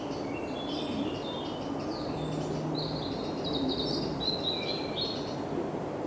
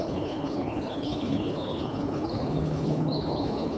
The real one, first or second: first